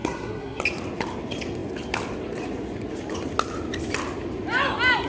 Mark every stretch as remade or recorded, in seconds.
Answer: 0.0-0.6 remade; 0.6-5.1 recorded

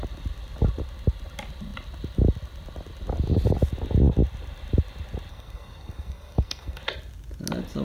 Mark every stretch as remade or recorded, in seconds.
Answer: 0.0-5.3 recorded; 5.3-6.8 remade; 6.8-7.8 recorded

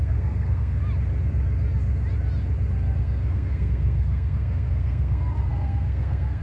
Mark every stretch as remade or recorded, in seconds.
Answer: 0.0-0.8 remade; 0.8-3.0 recorded; 3.0-6.4 remade

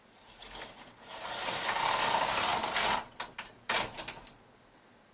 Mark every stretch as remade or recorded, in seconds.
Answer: 0.0-5.1 recorded

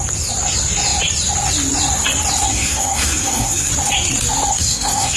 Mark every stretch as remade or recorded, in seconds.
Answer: 0.0-2.4 recorded; 2.4-3.7 remade; 3.7-4.5 recorded; 4.5-5.2 remade